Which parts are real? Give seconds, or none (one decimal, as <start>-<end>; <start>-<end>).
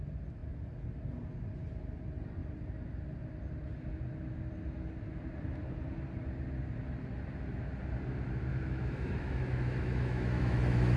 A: 0.0-8.5